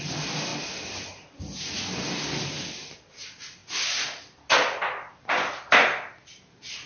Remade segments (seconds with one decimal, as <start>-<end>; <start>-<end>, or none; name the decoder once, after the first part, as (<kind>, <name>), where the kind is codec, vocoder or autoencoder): none